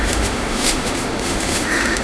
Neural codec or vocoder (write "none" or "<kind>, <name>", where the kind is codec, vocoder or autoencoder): autoencoder, DAC-VAE